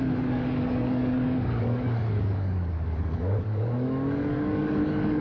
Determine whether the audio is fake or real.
fake